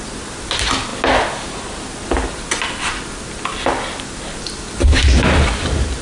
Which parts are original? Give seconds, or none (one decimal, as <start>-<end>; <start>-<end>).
0.0-6.0